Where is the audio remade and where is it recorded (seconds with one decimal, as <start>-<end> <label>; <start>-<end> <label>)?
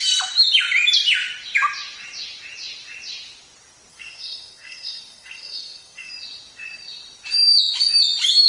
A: 0.0-3.9 recorded; 3.9-6.1 remade; 6.1-8.5 recorded